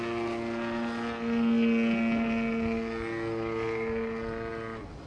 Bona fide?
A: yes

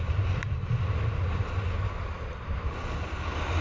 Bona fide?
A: yes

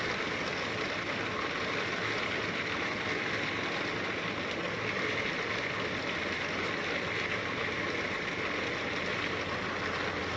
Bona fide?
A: yes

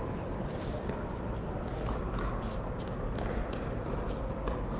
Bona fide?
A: yes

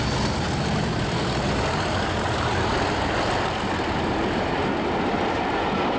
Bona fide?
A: yes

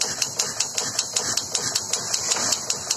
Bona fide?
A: yes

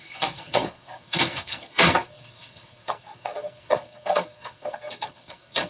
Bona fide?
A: no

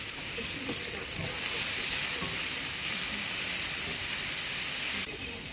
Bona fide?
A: no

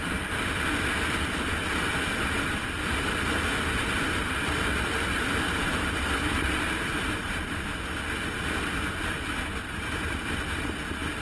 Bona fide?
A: yes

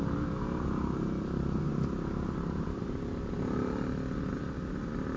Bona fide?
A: yes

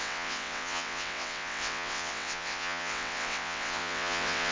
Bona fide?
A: no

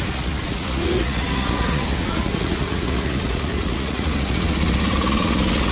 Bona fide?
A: no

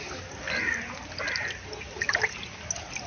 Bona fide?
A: yes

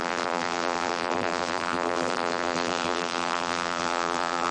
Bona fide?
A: no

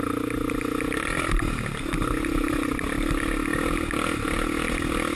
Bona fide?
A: yes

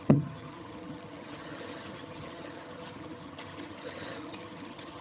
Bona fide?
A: no